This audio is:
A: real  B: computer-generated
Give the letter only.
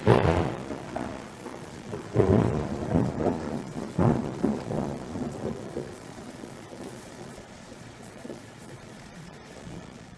B